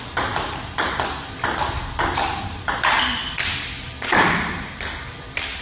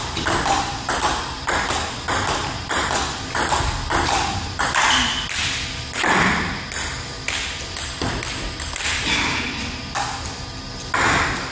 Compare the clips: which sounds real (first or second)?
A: second